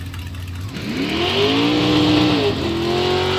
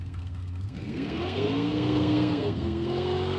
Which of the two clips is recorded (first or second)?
first